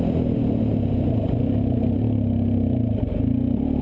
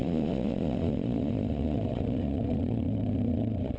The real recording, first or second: first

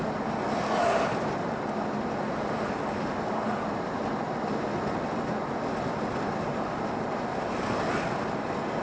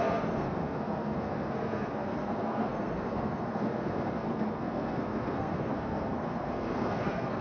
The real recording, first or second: first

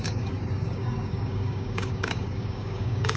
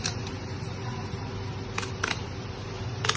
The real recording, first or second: second